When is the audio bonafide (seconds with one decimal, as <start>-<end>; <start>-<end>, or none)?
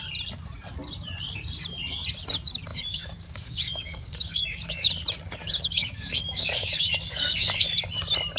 0.0-2.7; 4.9-5.4; 7.7-8.4